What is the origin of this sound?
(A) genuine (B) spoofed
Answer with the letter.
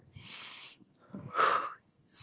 B